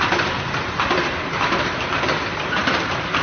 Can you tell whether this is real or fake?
fake